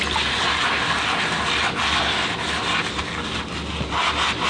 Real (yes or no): yes